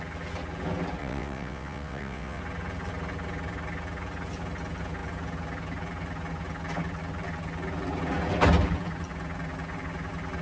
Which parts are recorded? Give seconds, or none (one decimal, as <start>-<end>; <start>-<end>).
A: 0.0-1.0; 2.4-10.4